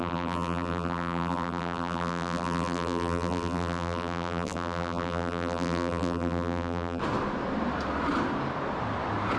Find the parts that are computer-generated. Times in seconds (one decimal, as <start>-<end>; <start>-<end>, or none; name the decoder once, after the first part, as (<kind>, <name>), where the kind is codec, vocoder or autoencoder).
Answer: 0.0-7.0 (vocoder, BigVGAN v2)